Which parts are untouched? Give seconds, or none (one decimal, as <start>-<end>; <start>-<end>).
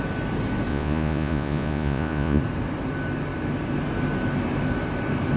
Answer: 0.0-0.7; 2.4-5.4